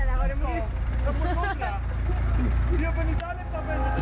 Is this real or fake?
real